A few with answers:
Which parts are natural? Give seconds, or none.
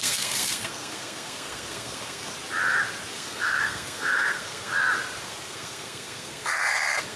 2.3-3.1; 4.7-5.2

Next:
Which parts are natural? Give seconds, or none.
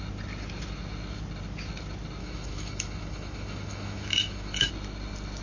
0.0-2.2; 4.7-5.4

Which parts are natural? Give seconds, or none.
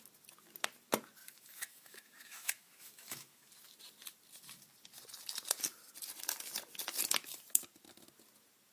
0.0-1.2; 3.5-8.7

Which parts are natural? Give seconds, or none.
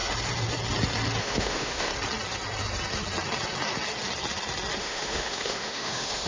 0.0-1.2; 1.9-4.8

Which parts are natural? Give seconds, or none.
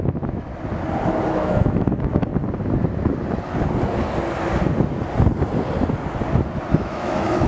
0.5-1.3; 2.3-6.8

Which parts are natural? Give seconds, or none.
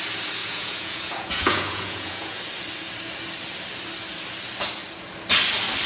0.0-0.4; 2.4-5.9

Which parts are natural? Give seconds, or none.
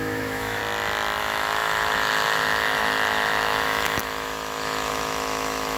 0.6-1.2